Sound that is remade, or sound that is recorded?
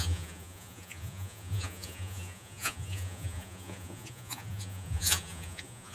remade